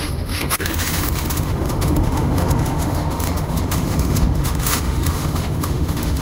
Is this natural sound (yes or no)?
no